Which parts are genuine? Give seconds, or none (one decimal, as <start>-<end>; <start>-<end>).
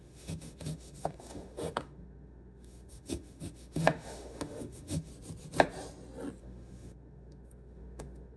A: 5.1-6.4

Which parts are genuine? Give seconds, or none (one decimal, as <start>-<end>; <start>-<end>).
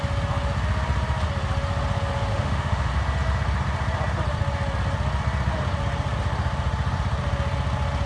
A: 0.0-2.3; 2.9-8.1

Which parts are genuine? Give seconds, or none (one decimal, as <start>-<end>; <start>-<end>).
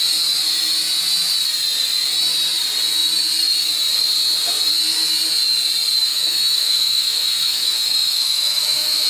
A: 0.0-6.1